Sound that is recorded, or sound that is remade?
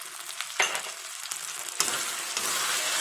recorded